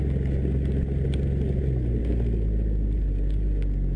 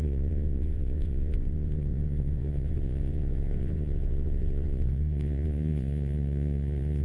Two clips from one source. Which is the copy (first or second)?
second